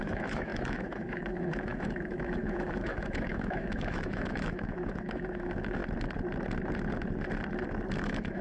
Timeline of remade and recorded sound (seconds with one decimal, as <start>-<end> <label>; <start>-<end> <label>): 0.0-5.8 remade; 5.8-8.0 recorded; 8.0-8.4 remade

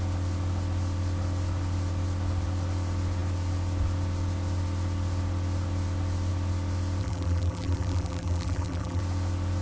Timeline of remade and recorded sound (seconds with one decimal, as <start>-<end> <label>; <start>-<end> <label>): 0.0-7.0 recorded; 7.0-9.0 remade; 9.0-9.6 recorded

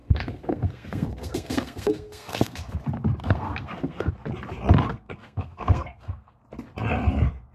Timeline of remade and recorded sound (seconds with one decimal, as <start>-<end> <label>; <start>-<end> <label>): 0.0-2.8 remade; 2.8-3.2 recorded; 3.2-4.1 remade; 4.1-4.9 recorded; 4.9-6.4 remade; 6.4-7.5 recorded